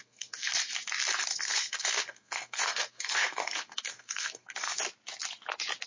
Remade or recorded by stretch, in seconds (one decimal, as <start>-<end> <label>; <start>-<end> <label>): 0.0-0.5 remade; 0.5-1.3 recorded; 1.3-4.8 remade; 4.8-5.9 recorded